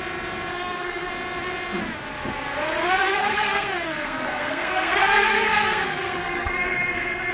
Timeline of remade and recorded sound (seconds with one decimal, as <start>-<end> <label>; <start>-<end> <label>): 0.0-0.5 recorded; 0.5-1.1 remade; 1.1-3.0 recorded; 3.0-7.3 remade